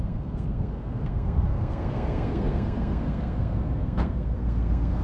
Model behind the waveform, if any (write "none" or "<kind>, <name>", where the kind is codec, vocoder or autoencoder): codec, SNAC